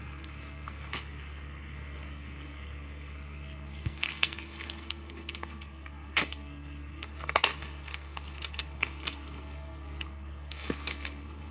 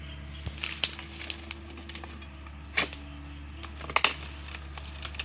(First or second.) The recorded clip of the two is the second